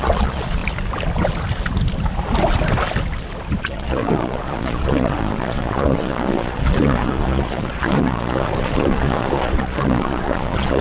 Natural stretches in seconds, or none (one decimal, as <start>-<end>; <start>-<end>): 0.6-3.6